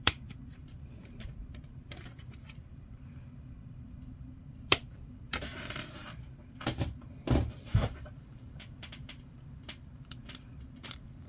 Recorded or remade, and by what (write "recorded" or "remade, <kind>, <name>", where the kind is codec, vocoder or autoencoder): remade, vocoder, BigVGAN v2